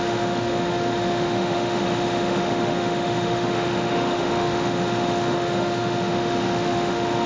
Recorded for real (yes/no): no